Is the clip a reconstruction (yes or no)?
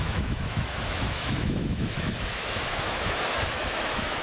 yes